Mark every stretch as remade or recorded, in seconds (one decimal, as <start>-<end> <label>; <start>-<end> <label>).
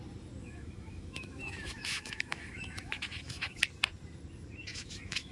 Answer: 0.0-0.4 recorded; 0.4-3.6 remade; 3.6-4.7 recorded; 4.7-5.3 remade